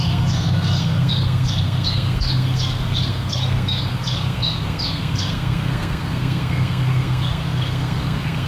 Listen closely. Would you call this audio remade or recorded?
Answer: remade